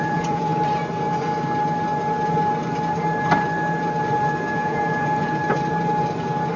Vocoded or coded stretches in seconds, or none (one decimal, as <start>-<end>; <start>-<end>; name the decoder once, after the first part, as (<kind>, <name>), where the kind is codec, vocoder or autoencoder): 0.0-0.5 (vocoder, Vocos); 4.4-5.4